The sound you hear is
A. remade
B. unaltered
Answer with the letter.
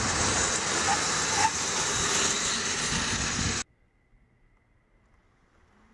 B